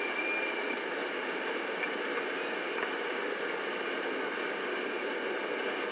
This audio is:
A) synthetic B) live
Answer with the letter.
B